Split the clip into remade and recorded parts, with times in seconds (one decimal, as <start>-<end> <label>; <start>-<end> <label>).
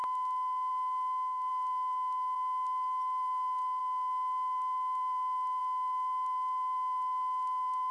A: 0.0-7.9 recorded